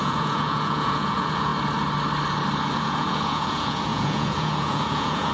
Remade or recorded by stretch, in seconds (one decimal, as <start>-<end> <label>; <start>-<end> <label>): 0.0-1.5 remade; 1.5-2.7 recorded; 2.7-5.3 remade